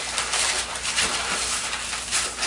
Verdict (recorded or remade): recorded